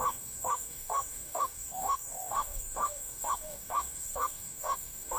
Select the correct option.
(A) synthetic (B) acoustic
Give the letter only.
A